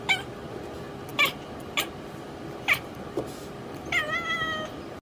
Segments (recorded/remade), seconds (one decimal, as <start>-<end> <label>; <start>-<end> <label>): 0.0-5.0 recorded